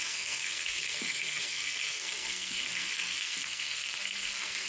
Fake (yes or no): yes